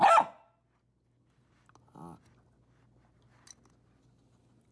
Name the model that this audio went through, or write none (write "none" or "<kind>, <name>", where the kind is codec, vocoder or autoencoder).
none